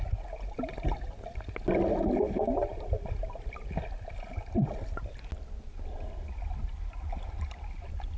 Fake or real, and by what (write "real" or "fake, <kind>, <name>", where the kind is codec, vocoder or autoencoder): real